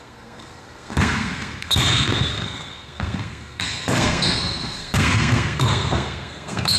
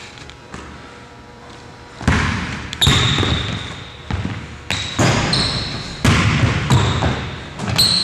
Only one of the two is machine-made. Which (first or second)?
first